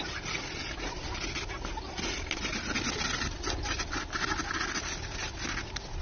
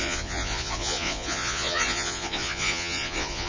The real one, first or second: first